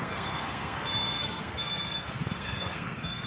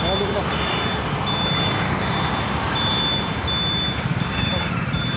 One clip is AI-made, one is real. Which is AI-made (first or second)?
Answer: first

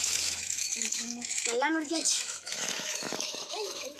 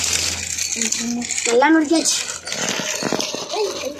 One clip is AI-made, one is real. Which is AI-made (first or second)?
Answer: first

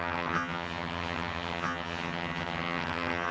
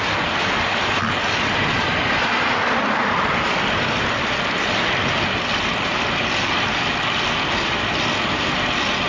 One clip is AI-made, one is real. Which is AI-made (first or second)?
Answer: first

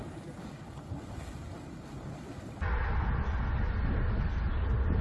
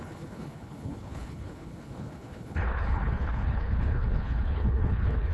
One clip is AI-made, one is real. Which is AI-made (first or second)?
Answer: second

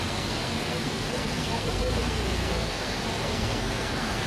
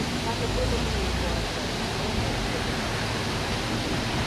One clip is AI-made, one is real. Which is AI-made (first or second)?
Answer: first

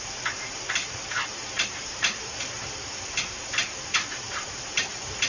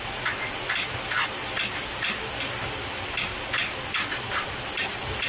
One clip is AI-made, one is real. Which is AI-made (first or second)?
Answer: first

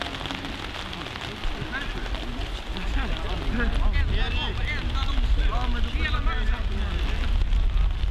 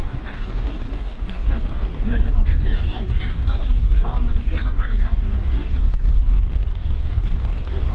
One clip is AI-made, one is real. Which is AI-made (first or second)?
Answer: second